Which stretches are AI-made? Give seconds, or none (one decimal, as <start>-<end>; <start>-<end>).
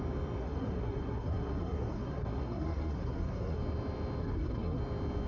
0.4-3.6; 4.2-4.8